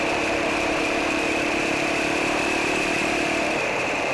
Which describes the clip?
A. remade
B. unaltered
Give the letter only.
A